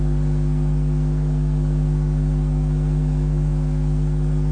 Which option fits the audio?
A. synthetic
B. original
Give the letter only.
A